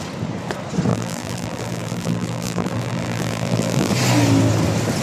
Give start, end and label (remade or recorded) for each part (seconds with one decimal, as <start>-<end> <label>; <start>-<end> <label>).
0.0-0.9 recorded; 0.9-3.9 remade; 3.9-5.0 recorded